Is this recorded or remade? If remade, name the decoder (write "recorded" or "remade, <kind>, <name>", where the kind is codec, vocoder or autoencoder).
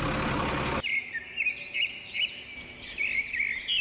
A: recorded